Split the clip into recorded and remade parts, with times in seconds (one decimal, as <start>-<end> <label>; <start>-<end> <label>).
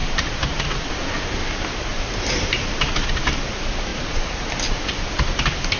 0.0-0.9 remade; 0.9-1.9 recorded; 1.9-3.1 remade; 3.1-3.9 recorded; 3.9-4.5 remade; 4.5-5.8 recorded